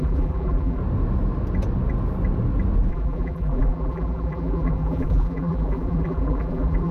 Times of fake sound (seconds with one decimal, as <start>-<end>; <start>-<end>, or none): 0.0-0.8; 2.9-6.9